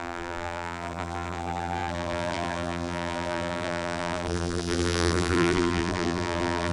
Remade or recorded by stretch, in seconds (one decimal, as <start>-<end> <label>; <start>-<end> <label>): 0.0-6.7 remade